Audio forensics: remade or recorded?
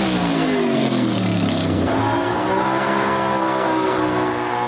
remade